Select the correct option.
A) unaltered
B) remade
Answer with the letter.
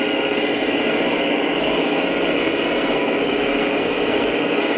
B